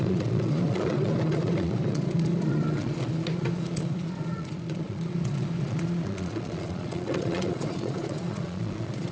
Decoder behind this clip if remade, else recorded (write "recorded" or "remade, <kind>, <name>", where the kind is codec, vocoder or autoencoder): remade, vocoder, Vocos